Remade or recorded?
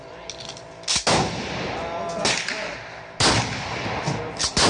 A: recorded